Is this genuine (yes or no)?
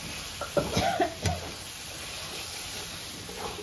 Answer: yes